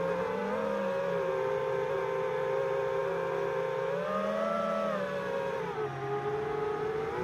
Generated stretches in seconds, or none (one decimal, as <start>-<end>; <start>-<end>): none